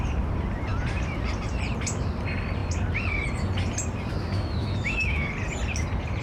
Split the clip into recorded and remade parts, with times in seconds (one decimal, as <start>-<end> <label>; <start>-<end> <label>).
0.0-4.1 recorded; 4.1-5.3 remade; 5.3-6.2 recorded